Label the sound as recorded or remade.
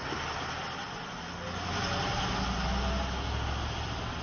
recorded